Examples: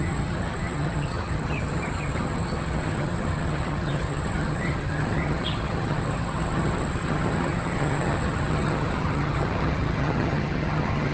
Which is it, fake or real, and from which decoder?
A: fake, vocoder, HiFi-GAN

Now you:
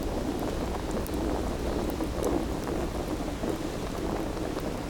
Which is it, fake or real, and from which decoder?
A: real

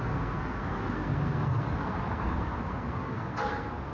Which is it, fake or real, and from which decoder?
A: fake, codec, SNAC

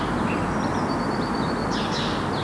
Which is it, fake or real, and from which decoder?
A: real